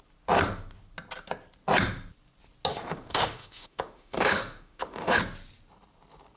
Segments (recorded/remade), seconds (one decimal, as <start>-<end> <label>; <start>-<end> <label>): 0.0-2.7 recorded; 2.7-5.2 remade; 5.2-6.4 recorded